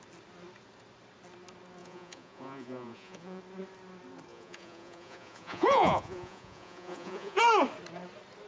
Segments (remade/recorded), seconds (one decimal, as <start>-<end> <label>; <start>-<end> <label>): 0.0-1.8 recorded; 1.8-3.4 remade; 3.4-4.3 recorded; 4.3-7.4 remade; 7.4-8.5 recorded